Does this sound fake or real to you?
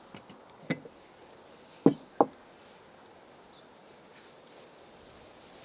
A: real